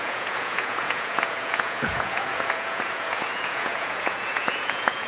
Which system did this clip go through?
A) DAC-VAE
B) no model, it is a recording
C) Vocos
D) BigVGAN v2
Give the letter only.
C